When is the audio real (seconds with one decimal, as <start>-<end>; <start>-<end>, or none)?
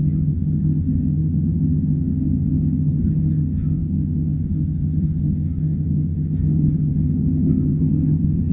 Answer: none